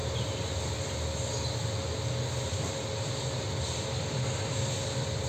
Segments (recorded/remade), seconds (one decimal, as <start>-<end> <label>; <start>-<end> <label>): 0.0-5.3 recorded